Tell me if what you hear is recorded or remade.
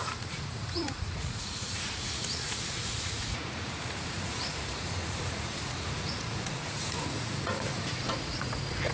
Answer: remade